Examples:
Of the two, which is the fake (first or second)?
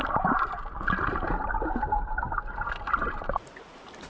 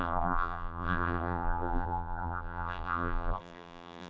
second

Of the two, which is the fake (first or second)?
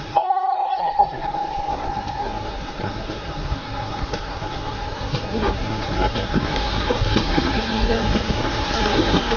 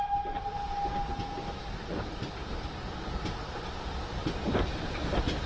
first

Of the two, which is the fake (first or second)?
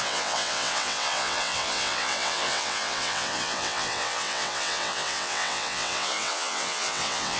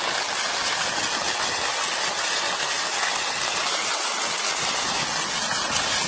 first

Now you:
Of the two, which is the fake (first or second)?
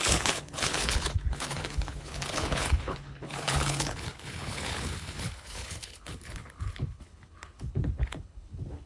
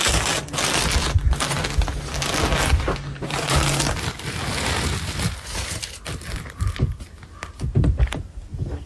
first